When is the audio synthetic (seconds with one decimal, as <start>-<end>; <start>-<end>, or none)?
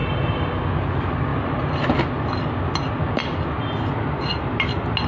none